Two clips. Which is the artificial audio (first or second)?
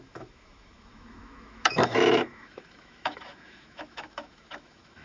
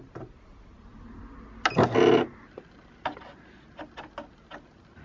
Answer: first